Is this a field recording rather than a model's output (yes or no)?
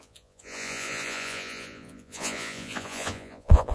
no